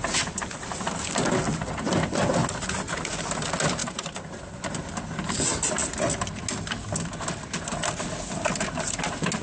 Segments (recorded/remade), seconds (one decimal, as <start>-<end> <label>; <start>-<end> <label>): 0.0-3.8 recorded; 3.8-5.3 remade; 5.3-9.4 recorded